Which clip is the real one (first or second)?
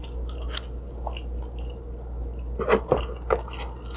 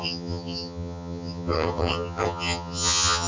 first